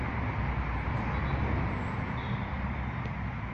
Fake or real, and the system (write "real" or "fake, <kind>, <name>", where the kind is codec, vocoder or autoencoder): real